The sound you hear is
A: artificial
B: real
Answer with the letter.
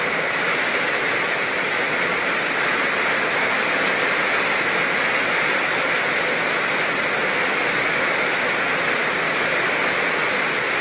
B